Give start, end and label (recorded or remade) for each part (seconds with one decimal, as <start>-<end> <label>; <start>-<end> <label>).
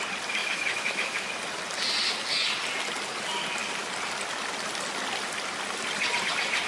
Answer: 0.0-0.4 recorded; 0.4-1.3 remade; 1.3-6.7 recorded